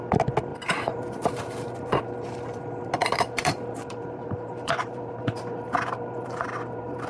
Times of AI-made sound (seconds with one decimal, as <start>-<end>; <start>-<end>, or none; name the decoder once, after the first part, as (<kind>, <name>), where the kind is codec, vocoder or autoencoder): 0.5-2.0 (vocoder, BigVGAN v2); 3.0-7.1